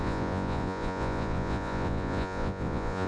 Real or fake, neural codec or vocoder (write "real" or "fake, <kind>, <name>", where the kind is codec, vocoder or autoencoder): fake, vocoder, Vocos